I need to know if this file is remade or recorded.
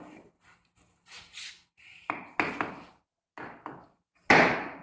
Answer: recorded